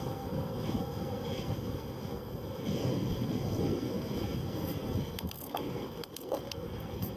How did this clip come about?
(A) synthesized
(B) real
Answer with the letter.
A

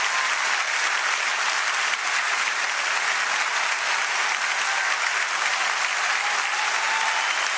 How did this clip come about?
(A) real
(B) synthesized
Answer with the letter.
A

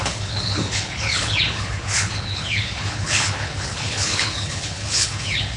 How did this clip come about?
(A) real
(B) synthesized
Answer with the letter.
B